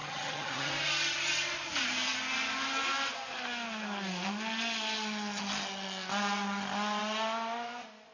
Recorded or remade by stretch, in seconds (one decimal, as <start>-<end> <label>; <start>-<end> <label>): 0.0-0.7 remade; 0.7-8.1 recorded